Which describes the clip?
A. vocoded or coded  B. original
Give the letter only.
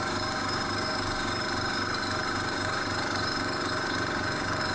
A